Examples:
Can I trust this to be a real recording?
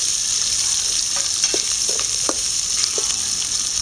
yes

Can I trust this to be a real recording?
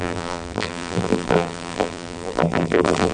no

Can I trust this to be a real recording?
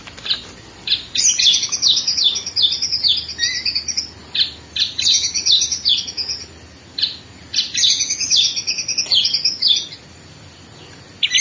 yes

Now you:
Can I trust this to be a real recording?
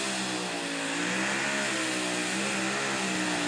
yes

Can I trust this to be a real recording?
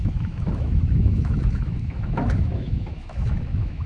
no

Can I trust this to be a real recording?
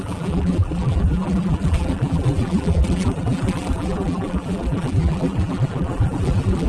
no